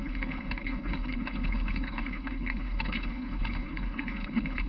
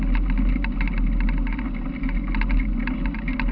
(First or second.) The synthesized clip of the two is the first